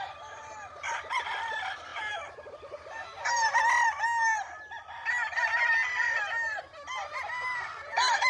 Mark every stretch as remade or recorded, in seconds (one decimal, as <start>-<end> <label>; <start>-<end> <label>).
0.0-1.9 recorded; 1.9-3.6 remade; 3.6-8.3 recorded